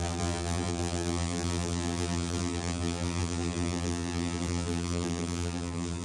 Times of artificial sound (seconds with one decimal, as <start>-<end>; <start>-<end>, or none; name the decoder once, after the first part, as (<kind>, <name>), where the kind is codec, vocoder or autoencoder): 0.0-6.0 (vocoder, BigVGAN v2)